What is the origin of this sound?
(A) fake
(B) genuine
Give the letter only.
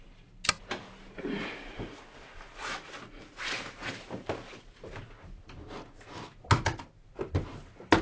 B